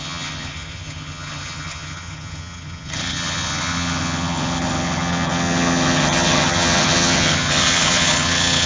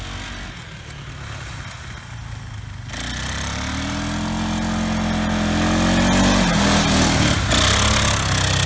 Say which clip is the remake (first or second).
first